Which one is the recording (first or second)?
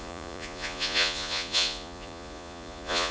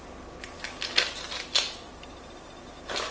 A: second